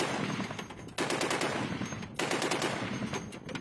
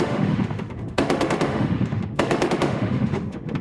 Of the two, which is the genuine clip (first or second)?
first